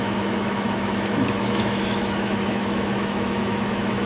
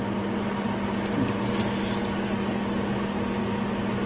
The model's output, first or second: first